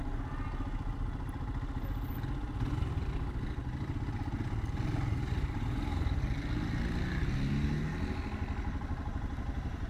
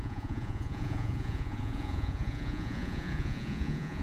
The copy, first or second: second